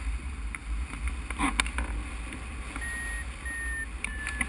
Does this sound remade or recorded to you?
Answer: recorded